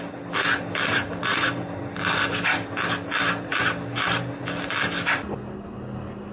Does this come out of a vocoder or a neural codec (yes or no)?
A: no